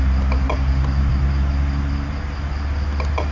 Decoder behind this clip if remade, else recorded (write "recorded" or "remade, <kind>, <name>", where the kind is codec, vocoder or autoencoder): recorded